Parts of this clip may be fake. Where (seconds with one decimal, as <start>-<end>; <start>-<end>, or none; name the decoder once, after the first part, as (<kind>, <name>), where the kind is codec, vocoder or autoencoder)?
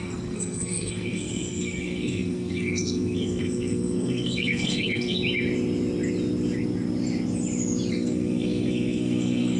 0.0-5.2 (codec, SNAC); 7.9-9.6